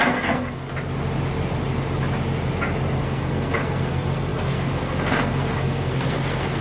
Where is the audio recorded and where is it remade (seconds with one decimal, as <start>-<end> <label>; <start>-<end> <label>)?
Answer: 0.0-0.7 remade; 0.7-3.0 recorded; 3.0-6.6 remade